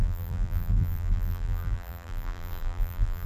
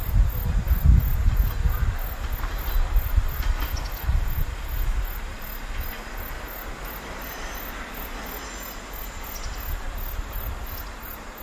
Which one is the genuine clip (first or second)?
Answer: second